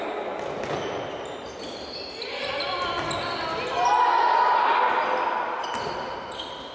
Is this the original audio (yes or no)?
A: yes